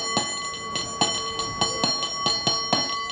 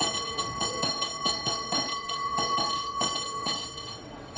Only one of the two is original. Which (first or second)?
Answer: first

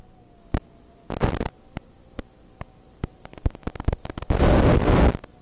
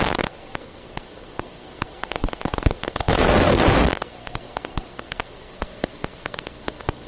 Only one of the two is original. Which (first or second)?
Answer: first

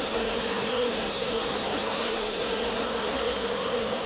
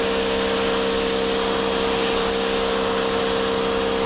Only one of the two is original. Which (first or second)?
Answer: second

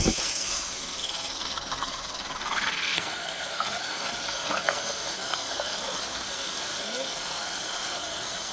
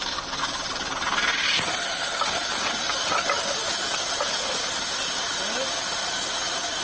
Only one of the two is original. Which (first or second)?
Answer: second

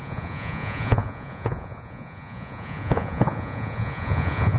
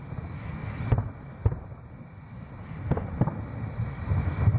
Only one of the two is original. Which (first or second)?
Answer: second